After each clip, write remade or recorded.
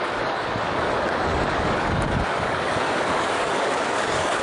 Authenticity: remade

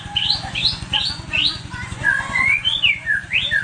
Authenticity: remade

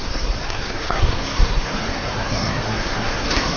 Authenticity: remade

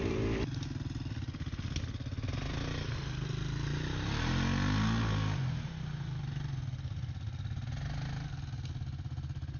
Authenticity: recorded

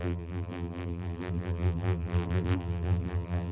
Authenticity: remade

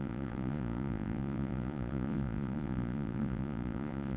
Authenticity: remade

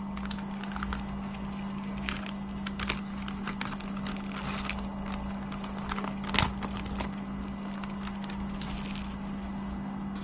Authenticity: recorded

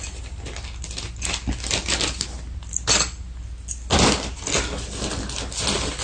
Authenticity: recorded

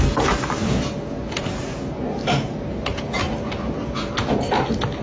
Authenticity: recorded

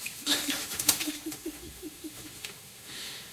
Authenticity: remade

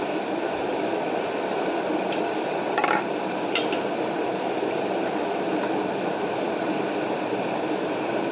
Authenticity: recorded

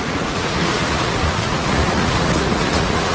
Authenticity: remade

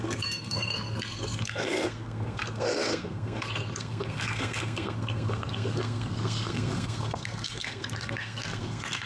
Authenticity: remade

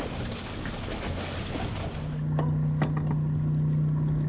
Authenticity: recorded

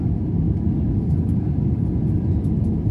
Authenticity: recorded